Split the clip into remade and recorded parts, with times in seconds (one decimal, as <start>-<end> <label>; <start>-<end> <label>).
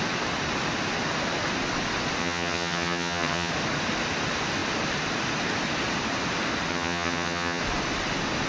0.0-2.2 recorded; 2.2-3.5 remade; 3.5-6.7 recorded; 6.7-7.6 remade; 7.6-8.5 recorded